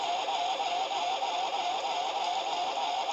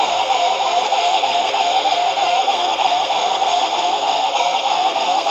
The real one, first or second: first